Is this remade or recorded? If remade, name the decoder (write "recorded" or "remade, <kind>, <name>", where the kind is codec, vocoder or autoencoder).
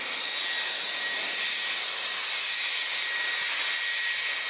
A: recorded